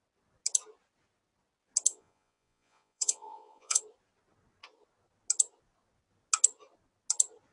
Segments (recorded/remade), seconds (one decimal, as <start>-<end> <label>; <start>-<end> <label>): 0.0-1.9 recorded; 1.9-3.8 remade; 3.8-7.5 recorded